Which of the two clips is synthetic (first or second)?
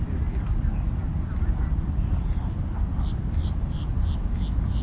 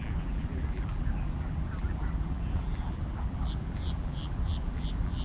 second